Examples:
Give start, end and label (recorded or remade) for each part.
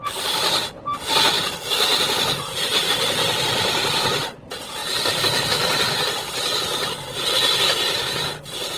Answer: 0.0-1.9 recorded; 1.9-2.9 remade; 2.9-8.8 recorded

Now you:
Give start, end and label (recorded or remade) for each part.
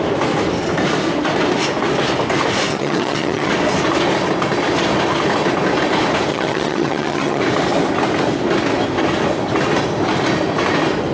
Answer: 0.0-2.7 recorded; 2.7-3.5 remade; 3.5-6.3 recorded; 6.3-7.4 remade; 7.4-11.1 recorded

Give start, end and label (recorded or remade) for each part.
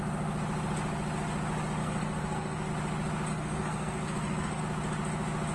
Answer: 0.0-1.8 recorded; 1.8-2.7 remade; 2.7-3.3 recorded; 3.3-4.6 remade; 4.6-5.5 recorded